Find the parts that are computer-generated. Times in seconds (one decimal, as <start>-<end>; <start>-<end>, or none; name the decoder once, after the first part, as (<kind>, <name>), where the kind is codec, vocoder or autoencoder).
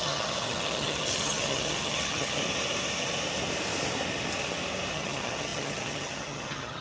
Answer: 0.0-2.4 (vocoder, HiFi-GAN); 4.9-6.8